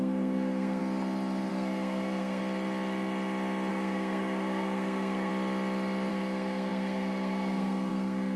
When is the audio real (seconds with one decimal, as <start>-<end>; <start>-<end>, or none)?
0.8-1.5; 2.4-3.7; 5.3-6.1